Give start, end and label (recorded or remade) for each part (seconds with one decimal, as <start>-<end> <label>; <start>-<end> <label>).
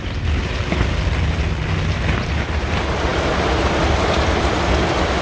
0.0-0.5 remade; 0.5-2.3 recorded; 2.3-5.2 remade